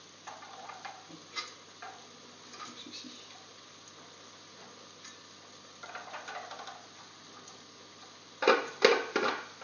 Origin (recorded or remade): recorded